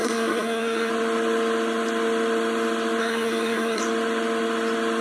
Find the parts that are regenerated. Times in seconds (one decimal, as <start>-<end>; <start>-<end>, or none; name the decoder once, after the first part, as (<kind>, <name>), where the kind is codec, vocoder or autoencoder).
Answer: 0.0-0.9 (codec, SNAC); 3.0-3.8